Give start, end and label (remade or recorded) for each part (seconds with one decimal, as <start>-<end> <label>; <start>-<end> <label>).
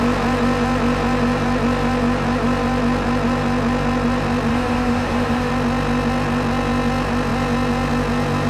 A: 0.0-4.5 recorded; 4.5-5.5 remade; 5.5-8.5 recorded